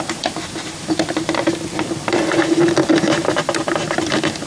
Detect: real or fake fake